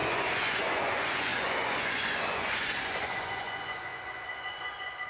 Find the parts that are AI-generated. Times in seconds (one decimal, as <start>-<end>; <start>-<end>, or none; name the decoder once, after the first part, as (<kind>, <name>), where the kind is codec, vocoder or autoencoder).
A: 0.0-5.1 (vocoder, Vocos)